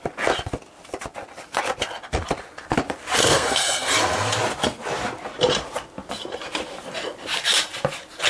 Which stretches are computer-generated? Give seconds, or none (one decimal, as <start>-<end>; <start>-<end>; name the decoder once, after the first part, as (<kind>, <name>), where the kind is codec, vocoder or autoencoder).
3.2-3.9 (codec, SNAC)